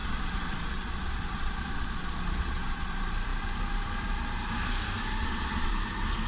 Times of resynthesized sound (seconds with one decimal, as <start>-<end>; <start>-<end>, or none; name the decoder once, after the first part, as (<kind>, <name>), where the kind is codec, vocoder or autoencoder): 0.0-2.9 (vocoder, Vocos); 5.2-5.7